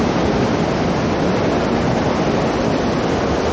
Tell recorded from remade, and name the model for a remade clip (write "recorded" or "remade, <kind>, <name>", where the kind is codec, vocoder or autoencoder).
recorded